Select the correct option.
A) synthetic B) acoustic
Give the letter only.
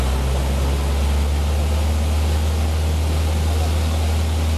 B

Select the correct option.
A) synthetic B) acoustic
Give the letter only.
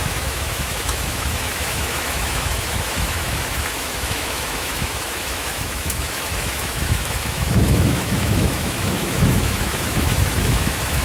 A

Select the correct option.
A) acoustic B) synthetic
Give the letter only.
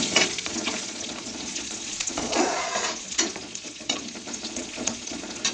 B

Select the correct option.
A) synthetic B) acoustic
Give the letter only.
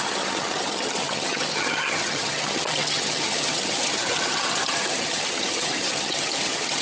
A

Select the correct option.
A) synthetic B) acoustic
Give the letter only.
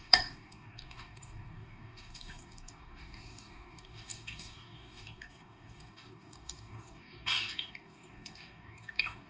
A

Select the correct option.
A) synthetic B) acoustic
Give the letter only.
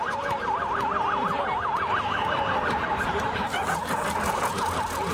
B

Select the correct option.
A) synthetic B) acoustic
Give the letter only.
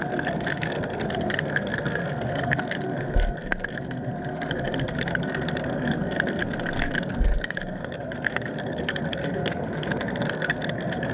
A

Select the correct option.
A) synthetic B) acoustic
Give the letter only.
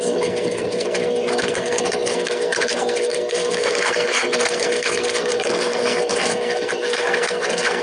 A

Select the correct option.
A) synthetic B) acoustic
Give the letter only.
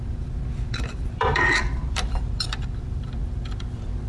A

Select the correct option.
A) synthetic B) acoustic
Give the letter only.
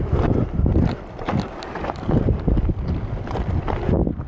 B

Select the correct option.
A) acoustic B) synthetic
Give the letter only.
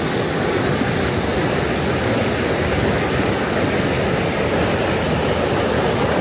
A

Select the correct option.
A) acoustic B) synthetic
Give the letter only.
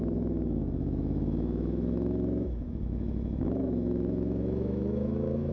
B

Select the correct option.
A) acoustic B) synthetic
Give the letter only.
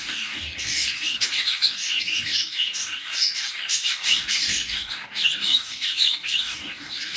B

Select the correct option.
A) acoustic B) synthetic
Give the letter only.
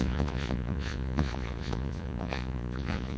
B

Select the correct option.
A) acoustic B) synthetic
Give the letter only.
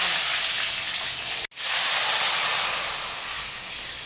A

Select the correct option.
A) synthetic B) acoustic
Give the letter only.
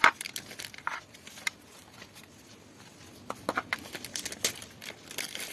B